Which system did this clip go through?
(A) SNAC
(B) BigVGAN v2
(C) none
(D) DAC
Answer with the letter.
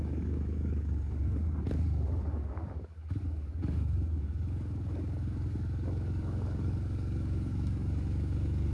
D